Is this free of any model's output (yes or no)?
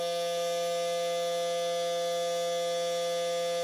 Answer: yes